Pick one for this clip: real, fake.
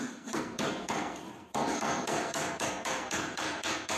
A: fake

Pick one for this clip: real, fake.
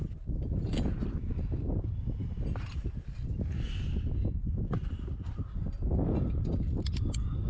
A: real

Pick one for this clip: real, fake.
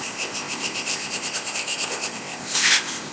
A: fake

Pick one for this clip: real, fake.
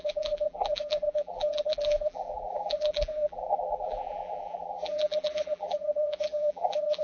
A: fake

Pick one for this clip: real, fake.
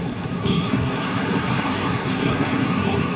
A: fake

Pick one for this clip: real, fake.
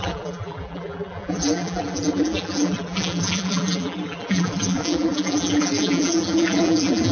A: fake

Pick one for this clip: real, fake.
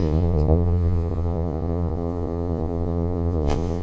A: fake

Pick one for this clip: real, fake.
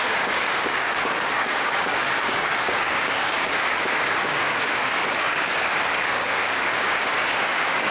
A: fake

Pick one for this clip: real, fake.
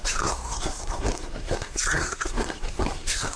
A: fake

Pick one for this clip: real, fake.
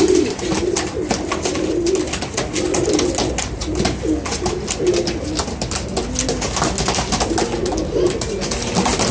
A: real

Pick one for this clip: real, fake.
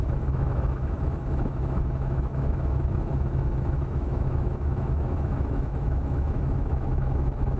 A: fake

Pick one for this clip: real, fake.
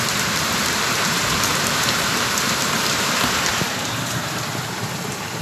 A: fake